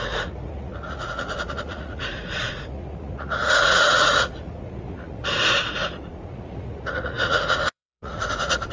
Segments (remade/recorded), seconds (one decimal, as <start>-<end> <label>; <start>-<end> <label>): 0.0-8.7 remade